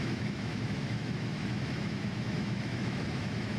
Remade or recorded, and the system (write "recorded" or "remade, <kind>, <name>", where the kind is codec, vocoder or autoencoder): remade, autoencoder, DAC-VAE